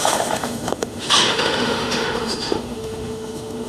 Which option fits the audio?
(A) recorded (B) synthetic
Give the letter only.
B